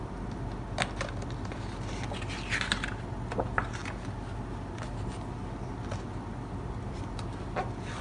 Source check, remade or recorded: recorded